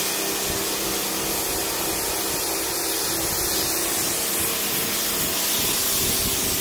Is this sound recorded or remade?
recorded